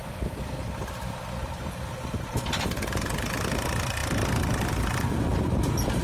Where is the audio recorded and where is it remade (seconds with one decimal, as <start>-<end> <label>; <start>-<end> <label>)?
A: 0.0-6.0 remade